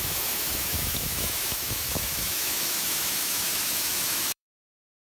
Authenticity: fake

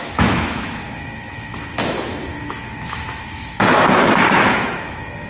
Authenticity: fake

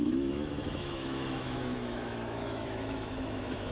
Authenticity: fake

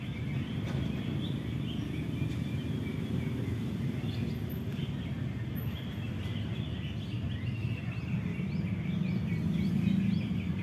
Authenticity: real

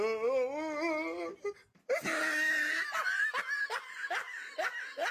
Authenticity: real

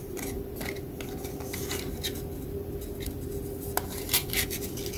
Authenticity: real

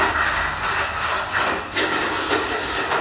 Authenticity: real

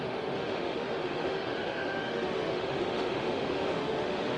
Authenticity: fake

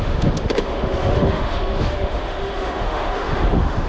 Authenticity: fake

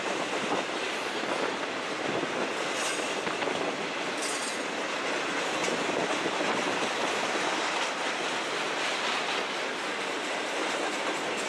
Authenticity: real